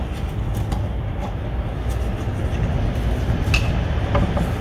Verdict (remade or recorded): recorded